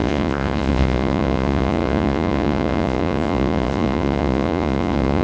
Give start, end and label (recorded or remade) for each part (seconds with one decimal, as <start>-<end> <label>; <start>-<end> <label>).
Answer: 0.0-5.2 remade